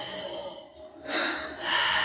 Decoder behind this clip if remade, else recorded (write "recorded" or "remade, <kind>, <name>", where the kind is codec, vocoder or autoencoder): recorded